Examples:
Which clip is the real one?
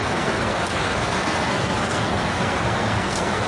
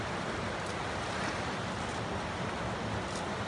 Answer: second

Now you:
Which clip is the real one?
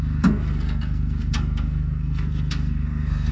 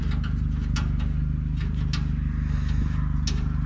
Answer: second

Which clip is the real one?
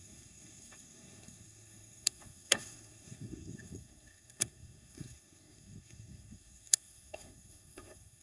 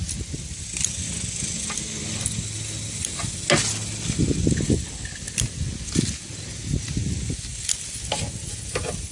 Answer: second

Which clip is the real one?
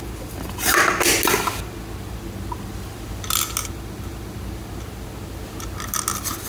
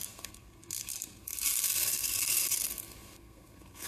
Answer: first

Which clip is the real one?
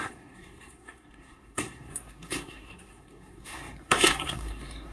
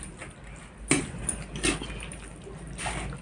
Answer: second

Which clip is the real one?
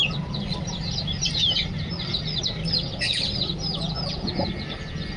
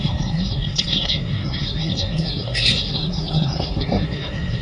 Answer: first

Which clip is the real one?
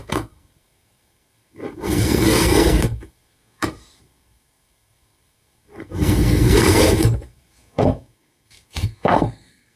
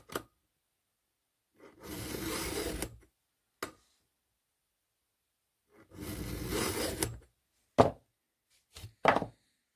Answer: second